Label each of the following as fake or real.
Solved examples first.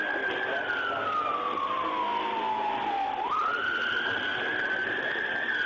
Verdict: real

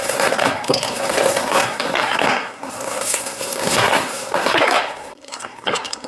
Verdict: fake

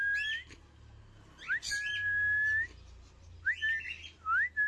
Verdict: real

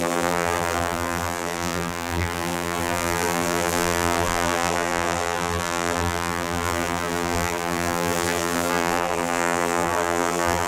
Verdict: fake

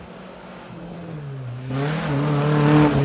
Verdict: real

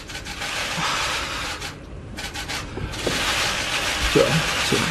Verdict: real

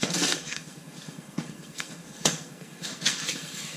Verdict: fake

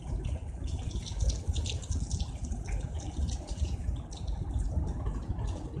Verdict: fake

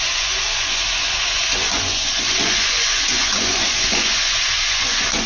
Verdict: fake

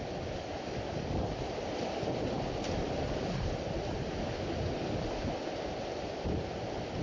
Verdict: real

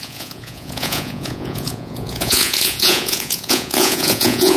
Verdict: fake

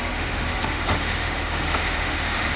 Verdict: fake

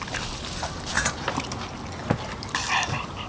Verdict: real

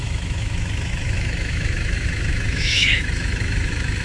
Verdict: fake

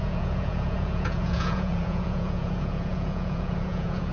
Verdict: fake